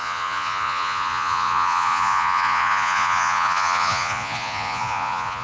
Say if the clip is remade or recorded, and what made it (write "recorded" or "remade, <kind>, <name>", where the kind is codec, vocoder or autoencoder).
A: remade, vocoder, Vocos